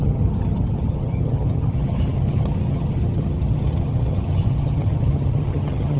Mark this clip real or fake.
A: fake